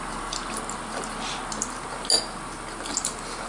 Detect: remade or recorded recorded